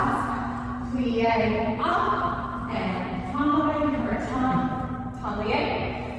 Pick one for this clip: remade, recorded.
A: remade